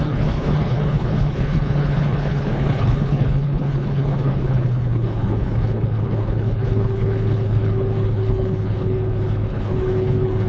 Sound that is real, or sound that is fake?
fake